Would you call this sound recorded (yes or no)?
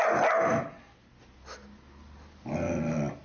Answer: yes